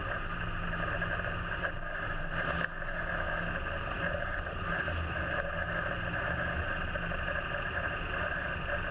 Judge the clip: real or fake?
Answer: real